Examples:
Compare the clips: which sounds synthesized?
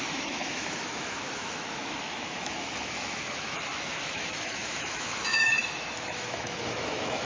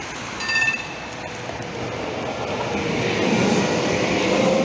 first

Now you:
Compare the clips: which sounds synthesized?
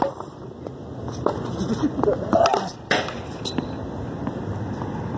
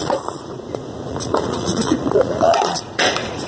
second